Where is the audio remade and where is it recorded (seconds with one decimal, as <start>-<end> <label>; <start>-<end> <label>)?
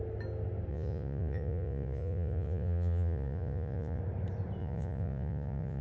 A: 0.0-0.7 recorded; 0.7-4.0 remade; 4.0-4.6 recorded; 4.6-5.8 remade